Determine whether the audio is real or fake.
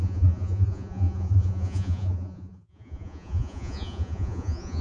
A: fake